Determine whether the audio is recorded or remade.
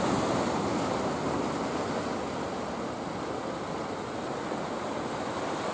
recorded